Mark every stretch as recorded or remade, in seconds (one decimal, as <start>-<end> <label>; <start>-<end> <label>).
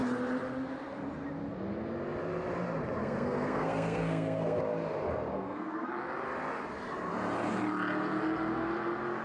0.0-3.0 recorded; 3.0-4.6 remade; 4.6-5.3 recorded; 5.3-5.9 remade; 5.9-9.2 recorded